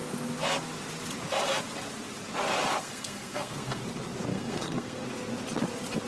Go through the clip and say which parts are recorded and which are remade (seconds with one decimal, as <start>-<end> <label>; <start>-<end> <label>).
0.0-2.8 recorded; 2.8-3.8 remade; 3.8-4.3 recorded; 4.3-5.0 remade; 5.0-6.1 recorded